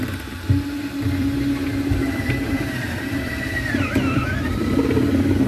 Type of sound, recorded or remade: remade